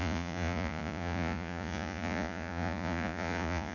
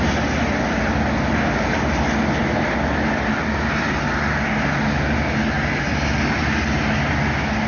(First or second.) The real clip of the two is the second